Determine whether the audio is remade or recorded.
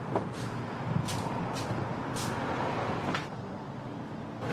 recorded